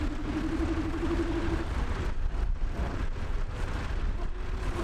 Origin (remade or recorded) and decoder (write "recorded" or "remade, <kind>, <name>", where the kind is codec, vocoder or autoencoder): recorded